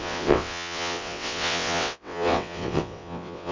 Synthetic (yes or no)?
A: yes